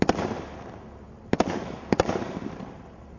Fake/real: real